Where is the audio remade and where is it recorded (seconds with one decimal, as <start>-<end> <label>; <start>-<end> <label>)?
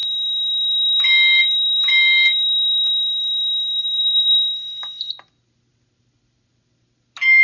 0.0-7.4 recorded